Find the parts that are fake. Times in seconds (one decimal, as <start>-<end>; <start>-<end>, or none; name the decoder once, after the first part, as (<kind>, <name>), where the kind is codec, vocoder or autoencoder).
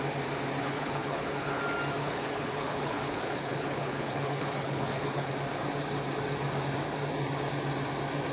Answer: 0.6-1.6 (codec, HILCodec); 2.0-5.3